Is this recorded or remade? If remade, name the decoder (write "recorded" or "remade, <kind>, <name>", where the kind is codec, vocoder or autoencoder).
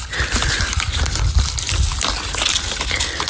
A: recorded